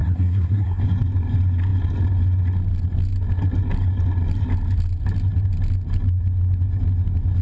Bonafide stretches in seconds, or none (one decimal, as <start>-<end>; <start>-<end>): 0.8-7.4